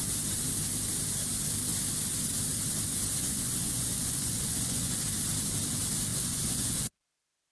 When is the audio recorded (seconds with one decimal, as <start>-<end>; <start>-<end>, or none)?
0.0-3.2; 5.0-6.1; 6.9-7.5